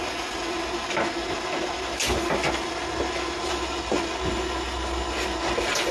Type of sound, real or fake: real